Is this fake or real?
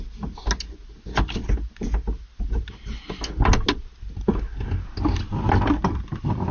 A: real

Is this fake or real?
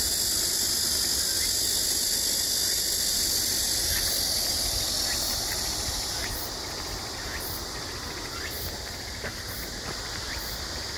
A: real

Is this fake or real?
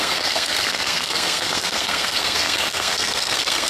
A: fake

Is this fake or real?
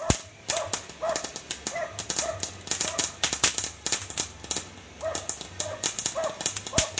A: real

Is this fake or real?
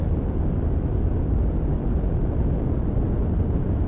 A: real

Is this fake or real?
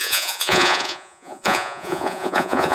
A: fake